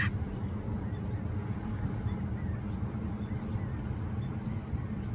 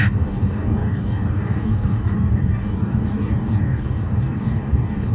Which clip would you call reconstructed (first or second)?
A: second